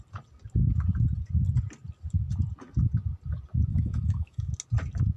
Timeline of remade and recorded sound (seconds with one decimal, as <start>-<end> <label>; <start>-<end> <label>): 0.0-3.7 recorded; 3.7-4.5 remade; 4.5-5.2 recorded